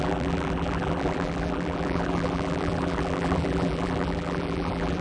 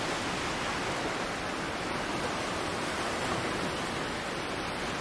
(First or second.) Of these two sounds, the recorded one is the second